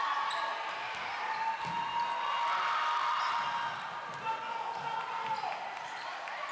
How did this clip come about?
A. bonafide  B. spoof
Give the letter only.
A